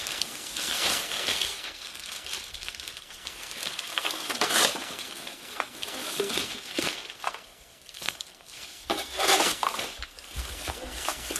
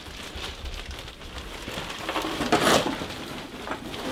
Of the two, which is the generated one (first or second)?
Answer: first